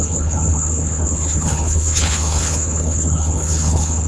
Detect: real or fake fake